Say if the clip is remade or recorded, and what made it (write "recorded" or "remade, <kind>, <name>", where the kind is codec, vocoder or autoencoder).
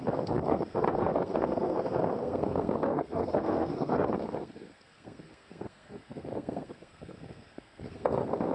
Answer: remade, codec, SNAC